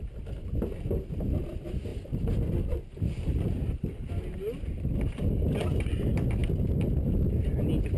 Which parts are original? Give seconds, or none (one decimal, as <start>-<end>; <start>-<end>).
0.0-1.9; 4.1-8.0